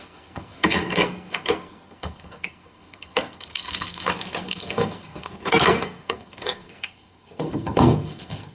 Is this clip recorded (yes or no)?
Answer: no